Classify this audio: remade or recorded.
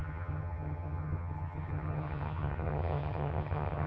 remade